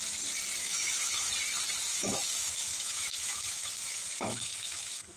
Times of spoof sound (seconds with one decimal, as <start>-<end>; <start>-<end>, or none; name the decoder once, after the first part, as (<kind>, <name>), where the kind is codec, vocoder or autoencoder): 0.6-1.3 (autoencoder, DAC-VAE); 1.9-5.2